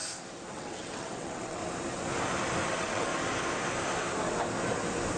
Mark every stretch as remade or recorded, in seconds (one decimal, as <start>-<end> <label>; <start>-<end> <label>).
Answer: 0.0-0.5 recorded; 0.5-1.6 remade; 1.6-2.7 recorded; 2.7-3.1 remade; 3.1-5.2 recorded